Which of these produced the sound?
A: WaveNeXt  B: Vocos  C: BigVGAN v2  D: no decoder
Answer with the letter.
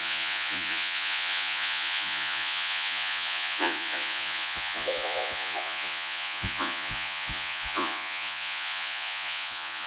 B